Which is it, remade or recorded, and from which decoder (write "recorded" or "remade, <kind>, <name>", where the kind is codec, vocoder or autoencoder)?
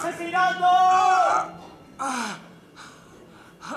remade, vocoder, BigVGAN v2